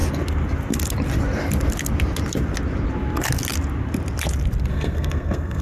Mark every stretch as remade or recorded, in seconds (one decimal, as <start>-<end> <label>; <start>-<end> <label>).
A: 0.0-4.7 recorded; 4.7-5.6 remade